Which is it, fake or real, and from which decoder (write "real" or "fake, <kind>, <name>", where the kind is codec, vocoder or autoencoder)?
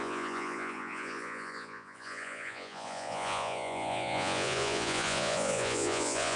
fake, vocoder, Vocos